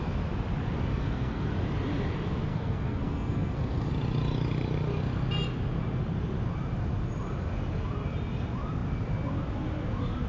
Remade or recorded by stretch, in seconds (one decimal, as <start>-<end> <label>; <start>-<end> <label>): 0.0-0.9 recorded; 0.9-1.5 remade; 1.5-2.5 recorded; 2.5-3.9 remade; 3.9-10.3 recorded